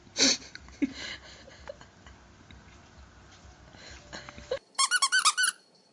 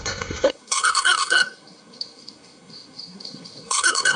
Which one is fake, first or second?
second